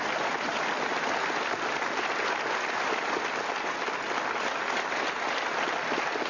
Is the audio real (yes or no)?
yes